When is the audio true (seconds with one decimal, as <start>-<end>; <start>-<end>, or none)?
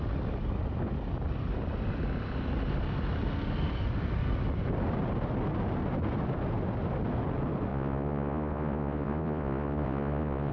0.0-7.7